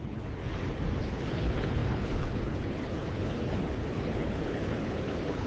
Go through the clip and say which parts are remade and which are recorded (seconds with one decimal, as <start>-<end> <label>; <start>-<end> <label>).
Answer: 0.0-0.4 remade; 0.4-1.0 recorded; 1.0-5.5 remade